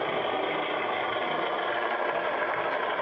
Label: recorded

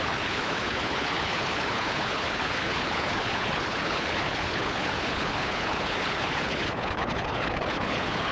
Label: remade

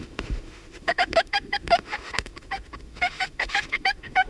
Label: remade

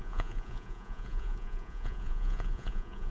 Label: remade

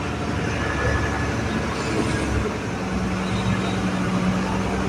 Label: recorded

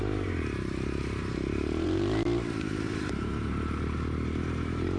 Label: remade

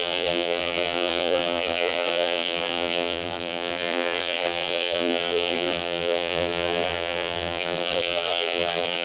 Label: remade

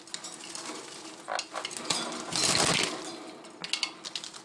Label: recorded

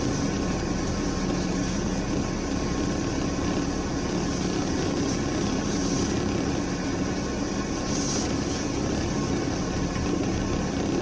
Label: recorded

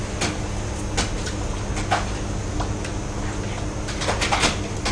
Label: recorded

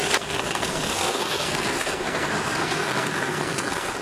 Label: remade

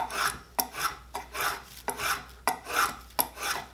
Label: recorded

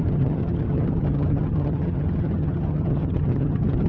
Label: remade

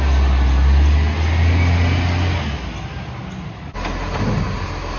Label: recorded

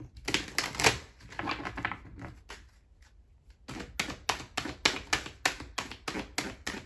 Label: recorded